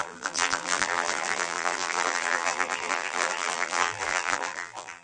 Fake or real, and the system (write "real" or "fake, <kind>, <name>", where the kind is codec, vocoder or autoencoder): fake, vocoder, BigVGAN v2